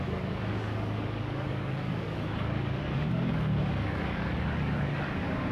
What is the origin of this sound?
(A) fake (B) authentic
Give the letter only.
A